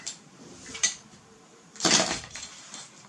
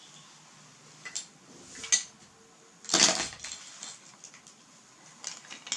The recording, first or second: second